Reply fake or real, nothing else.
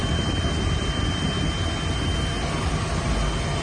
real